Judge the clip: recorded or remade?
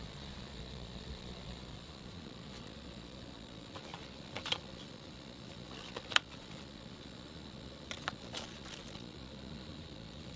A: remade